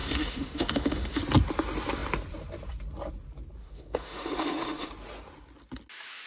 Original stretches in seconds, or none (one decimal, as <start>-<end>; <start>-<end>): 1.2-3.6; 4.9-6.3